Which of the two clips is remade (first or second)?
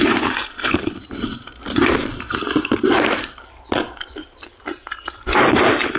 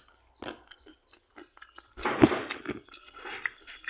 first